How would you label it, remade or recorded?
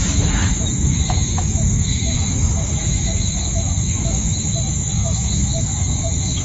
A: remade